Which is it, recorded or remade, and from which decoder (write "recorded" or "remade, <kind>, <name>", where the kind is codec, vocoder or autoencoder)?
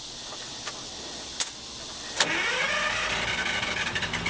recorded